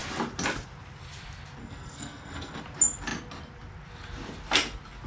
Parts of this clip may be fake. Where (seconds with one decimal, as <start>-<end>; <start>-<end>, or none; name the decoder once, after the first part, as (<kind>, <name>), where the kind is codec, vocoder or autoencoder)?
1.6-2.6 (codec, SNAC)